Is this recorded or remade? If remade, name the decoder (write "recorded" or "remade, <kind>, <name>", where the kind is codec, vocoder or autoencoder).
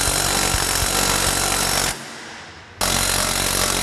recorded